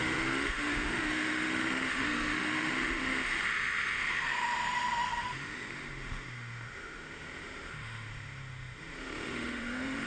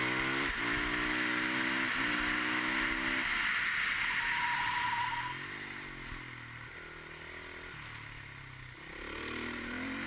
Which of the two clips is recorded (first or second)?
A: second